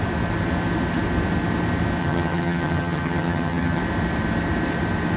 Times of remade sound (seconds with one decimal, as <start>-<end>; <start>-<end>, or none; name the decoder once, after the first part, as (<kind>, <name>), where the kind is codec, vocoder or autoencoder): 2.0-3.8 (vocoder, HiFi-GAN)